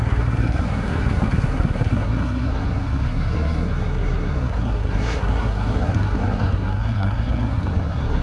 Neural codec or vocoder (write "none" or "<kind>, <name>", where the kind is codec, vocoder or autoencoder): codec, SNAC